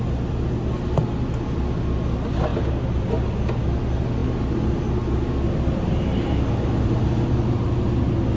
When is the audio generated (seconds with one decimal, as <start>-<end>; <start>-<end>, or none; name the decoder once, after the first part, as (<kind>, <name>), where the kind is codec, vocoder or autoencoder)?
none